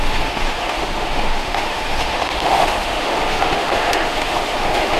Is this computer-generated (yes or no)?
yes